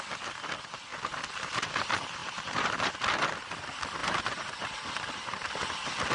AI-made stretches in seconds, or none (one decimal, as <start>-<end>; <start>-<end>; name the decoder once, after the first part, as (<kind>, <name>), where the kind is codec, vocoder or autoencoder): 0.9-1.7 (vocoder, BigVGAN v2); 2.2-2.9; 4.0-5.6